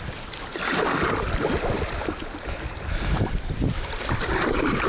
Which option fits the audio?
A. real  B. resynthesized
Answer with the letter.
A